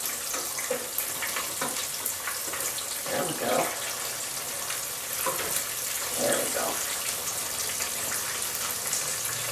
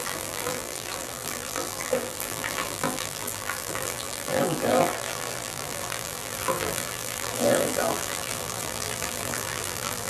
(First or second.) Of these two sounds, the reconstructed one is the second